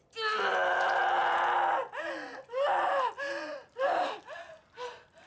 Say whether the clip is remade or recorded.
recorded